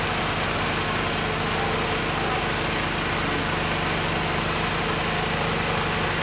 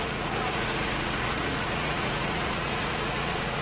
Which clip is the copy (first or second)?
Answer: second